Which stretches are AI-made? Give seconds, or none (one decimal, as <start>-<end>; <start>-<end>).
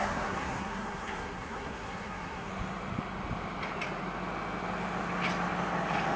0.0-2.5